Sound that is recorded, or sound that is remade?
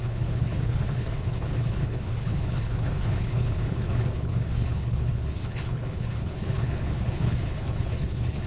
remade